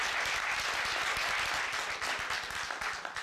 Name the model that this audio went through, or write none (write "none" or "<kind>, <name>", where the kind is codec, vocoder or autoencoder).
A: none